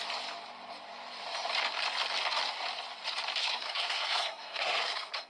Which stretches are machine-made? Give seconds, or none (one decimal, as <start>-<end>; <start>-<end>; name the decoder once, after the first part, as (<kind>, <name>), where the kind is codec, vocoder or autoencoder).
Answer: 3.4-5.3 (codec, SNAC)

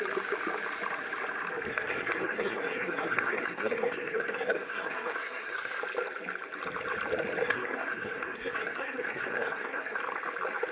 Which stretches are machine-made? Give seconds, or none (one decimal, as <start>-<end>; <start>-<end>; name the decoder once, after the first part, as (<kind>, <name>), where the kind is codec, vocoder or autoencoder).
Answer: 1.7-5.8 (codec, SNAC); 7.4-10.0

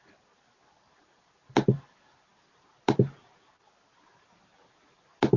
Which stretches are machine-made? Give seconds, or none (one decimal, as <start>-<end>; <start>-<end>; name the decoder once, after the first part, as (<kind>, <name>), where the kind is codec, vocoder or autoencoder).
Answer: none

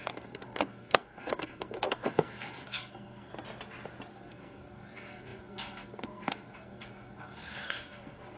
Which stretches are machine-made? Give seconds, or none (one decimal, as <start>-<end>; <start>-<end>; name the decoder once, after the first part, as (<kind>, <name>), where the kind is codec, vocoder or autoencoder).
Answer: 0.0-3.3 (codec, SNAC); 4.1-8.4

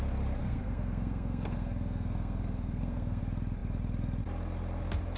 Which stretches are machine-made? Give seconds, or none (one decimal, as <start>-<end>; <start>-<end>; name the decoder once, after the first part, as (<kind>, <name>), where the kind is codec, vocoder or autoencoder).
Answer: 0.4-3.2 (codec, SNAC)

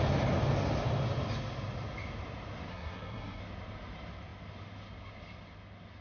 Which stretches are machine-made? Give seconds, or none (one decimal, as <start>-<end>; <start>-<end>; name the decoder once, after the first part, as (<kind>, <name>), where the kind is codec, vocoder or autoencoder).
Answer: 2.7-3.4 (codec, SNAC)